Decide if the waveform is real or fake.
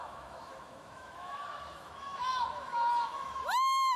fake